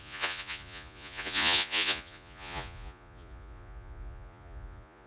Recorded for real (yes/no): no